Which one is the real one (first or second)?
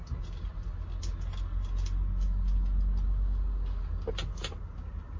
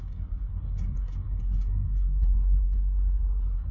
first